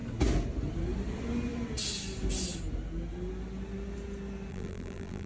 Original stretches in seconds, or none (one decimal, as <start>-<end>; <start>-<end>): 0.0-4.5